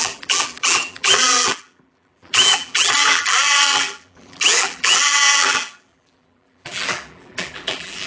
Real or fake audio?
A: fake